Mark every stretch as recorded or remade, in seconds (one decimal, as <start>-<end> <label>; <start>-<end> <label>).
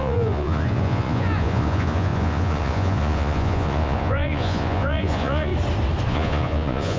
0.0-5.5 remade; 5.5-6.1 recorded; 6.1-7.0 remade